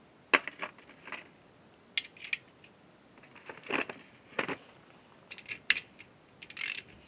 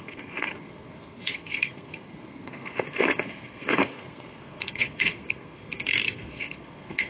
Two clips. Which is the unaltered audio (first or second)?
first